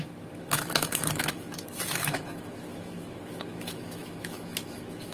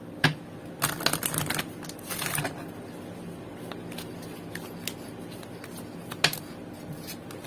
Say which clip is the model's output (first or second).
first